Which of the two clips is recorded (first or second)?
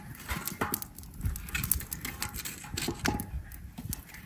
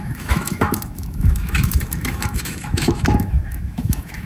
first